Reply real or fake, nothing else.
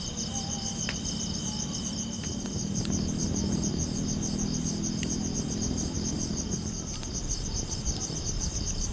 real